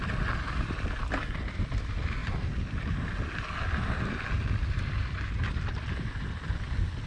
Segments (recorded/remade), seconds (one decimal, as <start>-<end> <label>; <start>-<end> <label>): 0.0-7.1 recorded

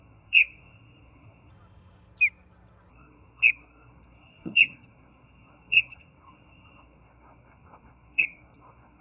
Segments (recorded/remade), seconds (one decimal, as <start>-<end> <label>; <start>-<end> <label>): 0.0-1.5 remade; 1.5-2.9 recorded; 2.9-9.0 remade

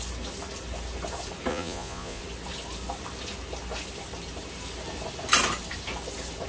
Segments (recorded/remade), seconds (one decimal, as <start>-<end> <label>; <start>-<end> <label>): 0.0-1.5 recorded; 1.5-2.2 remade; 2.2-6.5 recorded